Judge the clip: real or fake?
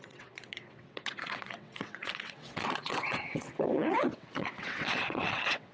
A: fake